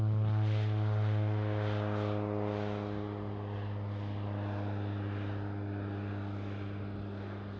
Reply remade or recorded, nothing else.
recorded